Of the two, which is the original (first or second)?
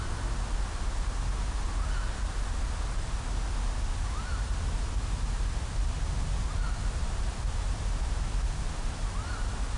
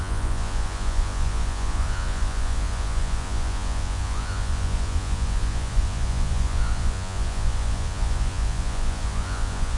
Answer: first